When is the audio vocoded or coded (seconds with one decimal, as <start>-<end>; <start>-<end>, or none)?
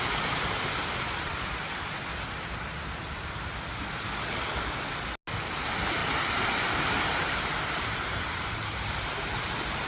0.0-2.1; 5.5-6.0; 7.0-9.9